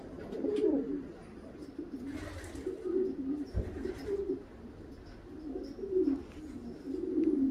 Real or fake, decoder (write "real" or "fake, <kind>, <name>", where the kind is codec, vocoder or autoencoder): real